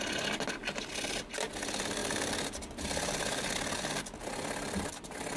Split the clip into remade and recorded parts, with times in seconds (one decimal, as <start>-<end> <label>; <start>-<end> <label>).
0.0-2.0 recorded; 2.0-5.4 remade